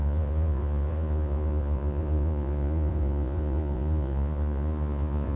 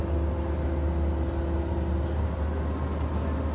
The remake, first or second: first